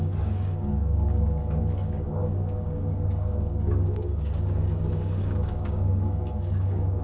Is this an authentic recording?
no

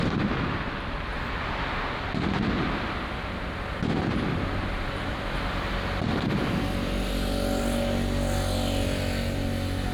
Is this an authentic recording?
yes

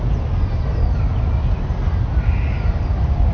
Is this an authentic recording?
yes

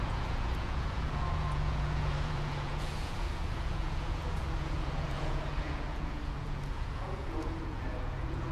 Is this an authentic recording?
no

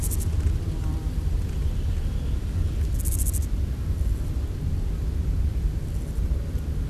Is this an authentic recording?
yes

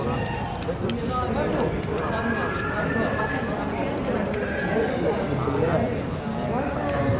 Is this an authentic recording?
yes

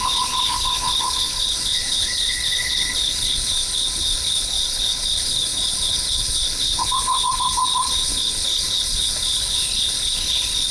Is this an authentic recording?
no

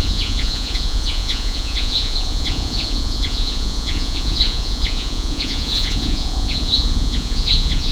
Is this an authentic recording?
no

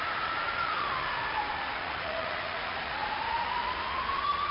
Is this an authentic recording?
no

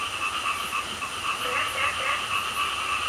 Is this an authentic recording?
yes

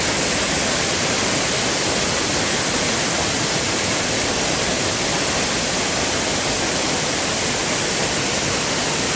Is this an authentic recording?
yes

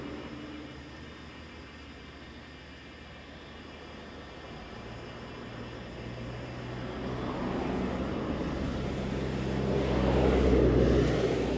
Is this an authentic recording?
yes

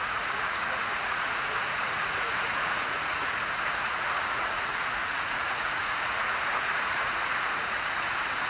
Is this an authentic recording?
no